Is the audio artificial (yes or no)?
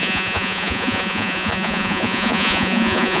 yes